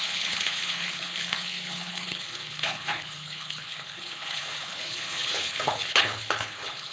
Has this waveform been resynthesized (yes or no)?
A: yes